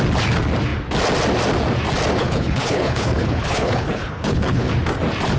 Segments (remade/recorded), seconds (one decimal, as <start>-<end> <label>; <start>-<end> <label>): 0.0-2.2 recorded; 2.2-4.7 remade; 4.7-5.4 recorded